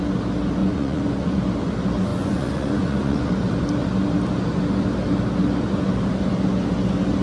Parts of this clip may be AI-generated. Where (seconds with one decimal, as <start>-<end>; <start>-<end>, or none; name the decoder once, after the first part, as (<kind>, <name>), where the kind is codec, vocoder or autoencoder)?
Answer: 0.6-1.4 (vocoder, Vocos); 2.1-3.3

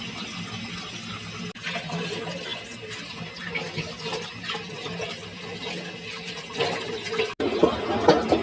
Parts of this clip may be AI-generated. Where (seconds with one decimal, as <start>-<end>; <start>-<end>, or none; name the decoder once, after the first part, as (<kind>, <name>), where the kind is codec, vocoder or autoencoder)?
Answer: none

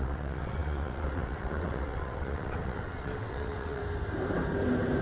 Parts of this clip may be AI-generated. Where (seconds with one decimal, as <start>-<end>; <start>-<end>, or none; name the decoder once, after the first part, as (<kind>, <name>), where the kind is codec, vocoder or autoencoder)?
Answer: 0.0-3.8 (vocoder, WaveNeXt)

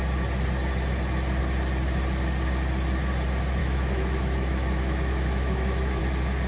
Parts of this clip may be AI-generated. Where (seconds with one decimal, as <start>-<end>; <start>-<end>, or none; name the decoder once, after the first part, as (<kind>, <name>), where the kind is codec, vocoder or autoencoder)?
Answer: 3.6-6.0 (autoencoder, DAC-VAE)

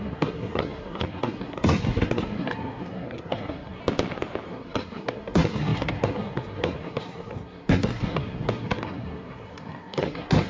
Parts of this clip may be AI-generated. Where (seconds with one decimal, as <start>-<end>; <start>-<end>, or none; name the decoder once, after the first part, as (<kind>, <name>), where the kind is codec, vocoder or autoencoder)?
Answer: 0.0-3.8 (codec, SNAC); 4.5-10.5

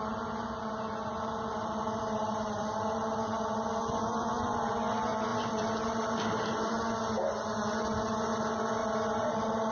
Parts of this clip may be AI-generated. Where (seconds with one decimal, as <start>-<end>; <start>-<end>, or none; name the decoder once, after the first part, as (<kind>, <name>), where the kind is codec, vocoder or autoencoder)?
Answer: 2.0-4.7 (vocoder, BigVGAN v2); 5.3-6.8; 8.8-9.7